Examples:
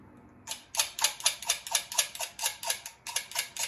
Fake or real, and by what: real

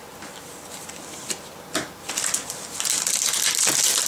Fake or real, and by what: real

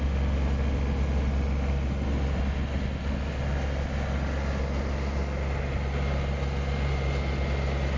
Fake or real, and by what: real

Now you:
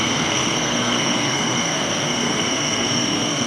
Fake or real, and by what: fake, codec, SNAC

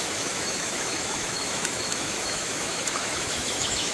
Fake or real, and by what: fake, autoencoder, DAC-VAE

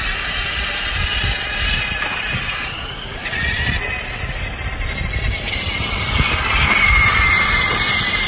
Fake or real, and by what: real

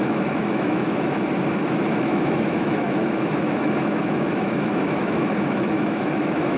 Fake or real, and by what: fake, autoencoder, DAC-VAE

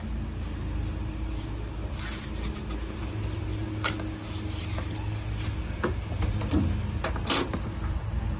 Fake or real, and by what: real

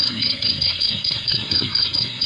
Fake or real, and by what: fake, codec, SNAC